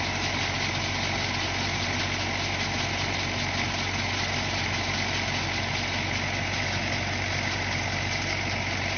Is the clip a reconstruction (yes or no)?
no